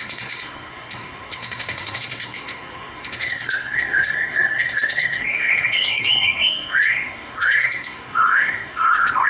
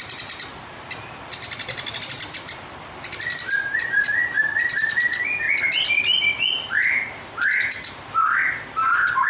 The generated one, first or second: first